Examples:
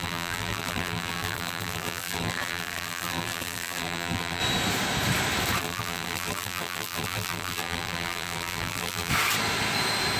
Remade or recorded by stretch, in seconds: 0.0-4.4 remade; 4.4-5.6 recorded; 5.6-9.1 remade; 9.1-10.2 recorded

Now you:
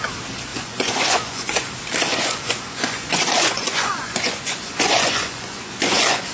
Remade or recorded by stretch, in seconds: 0.0-0.5 recorded; 0.5-1.7 remade; 1.7-2.1 recorded; 2.1-6.3 remade